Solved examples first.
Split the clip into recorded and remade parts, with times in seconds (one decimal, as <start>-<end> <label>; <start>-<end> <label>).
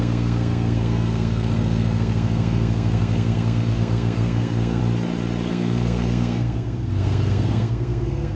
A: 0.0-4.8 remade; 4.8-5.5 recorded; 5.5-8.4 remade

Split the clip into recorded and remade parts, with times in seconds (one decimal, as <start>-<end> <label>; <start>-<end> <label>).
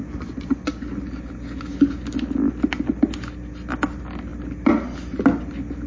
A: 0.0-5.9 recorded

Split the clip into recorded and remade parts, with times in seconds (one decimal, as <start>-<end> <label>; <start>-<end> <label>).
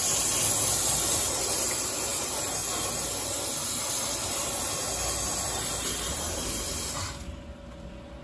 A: 0.0-8.2 recorded